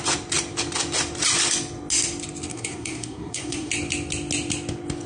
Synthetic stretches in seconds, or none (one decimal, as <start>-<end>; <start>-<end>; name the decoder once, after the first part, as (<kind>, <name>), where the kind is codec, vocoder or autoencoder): 2.5-3.7 (codec, SNAC)